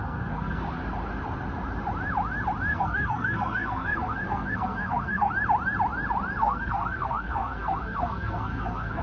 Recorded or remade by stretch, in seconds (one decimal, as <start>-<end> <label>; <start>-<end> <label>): 0.0-0.6 remade; 0.6-2.7 recorded; 2.7-5.3 remade; 5.3-6.4 recorded; 6.4-9.0 remade